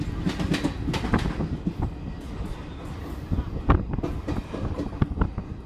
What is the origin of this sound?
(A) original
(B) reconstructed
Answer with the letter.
A